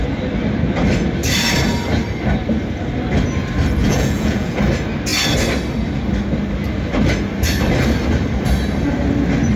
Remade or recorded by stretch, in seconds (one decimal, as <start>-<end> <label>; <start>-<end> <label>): 0.0-3.8 recorded; 3.8-4.6 remade; 4.6-9.6 recorded